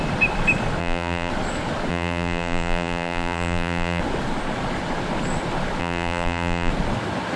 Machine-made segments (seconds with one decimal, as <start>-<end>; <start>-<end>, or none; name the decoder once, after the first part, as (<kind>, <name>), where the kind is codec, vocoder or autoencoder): 0.8-1.3 (vocoder, BigVGAN v2); 1.9-4.0; 5.8-6.7